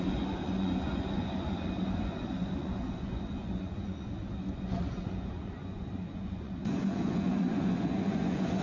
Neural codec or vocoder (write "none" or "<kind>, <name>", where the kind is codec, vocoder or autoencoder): vocoder, Vocos